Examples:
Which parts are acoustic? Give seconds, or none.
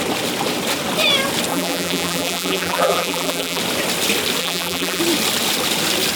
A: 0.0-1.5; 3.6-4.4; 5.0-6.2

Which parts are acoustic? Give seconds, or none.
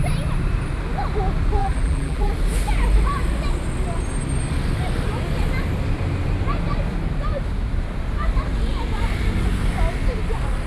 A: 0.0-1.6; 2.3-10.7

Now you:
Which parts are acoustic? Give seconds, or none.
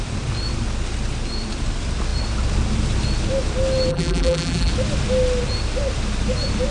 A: 0.0-3.9; 4.7-6.7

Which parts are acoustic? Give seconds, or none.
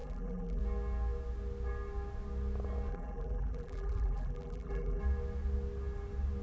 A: 0.6-2.9; 5.0-6.4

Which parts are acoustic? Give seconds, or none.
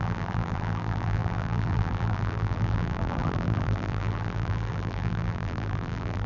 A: none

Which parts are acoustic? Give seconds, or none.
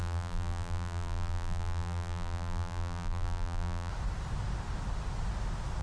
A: 3.9-5.8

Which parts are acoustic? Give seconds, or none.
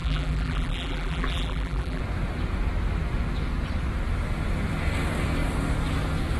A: 2.0-6.4